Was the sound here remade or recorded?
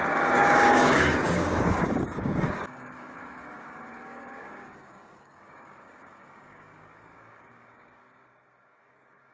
remade